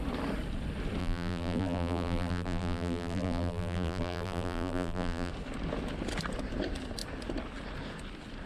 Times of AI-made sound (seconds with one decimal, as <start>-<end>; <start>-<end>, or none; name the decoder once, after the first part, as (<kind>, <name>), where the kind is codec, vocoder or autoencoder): 1.0-5.3 (vocoder, BigVGAN v2)